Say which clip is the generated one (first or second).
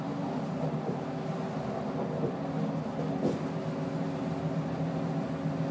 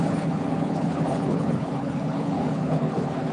second